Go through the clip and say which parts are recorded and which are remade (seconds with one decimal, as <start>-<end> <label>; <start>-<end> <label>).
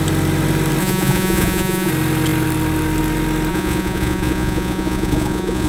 0.0-0.8 recorded; 0.8-1.9 remade; 1.9-3.5 recorded; 3.5-5.7 remade